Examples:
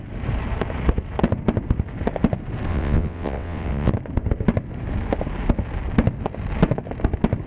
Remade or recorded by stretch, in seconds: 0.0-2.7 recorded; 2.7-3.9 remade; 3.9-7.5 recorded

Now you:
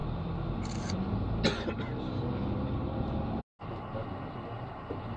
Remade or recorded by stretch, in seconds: 0.0-5.2 recorded

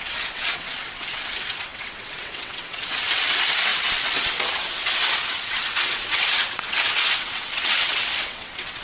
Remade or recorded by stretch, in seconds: 0.0-8.8 remade

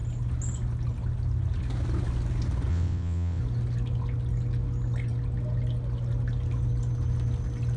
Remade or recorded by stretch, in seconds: 0.0-2.7 recorded; 2.7-3.4 remade; 3.4-7.8 recorded

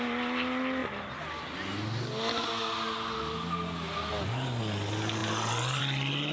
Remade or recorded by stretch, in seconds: 0.0-6.3 recorded